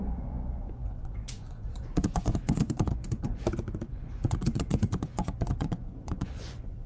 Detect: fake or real fake